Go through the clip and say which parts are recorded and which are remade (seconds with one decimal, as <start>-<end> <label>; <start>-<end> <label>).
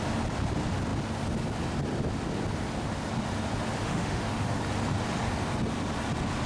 0.0-3.8 recorded; 3.8-4.6 remade; 4.6-6.5 recorded